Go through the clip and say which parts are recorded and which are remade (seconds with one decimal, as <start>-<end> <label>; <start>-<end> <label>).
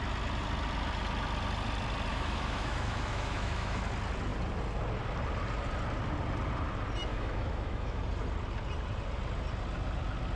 0.0-2.1 recorded; 2.1-3.8 remade; 3.8-7.1 recorded; 7.1-8.0 remade; 8.0-10.4 recorded